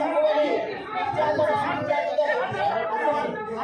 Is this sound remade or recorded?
recorded